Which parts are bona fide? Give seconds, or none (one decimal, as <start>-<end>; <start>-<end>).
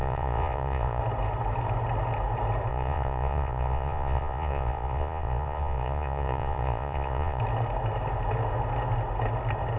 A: 1.0-2.7; 7.4-9.8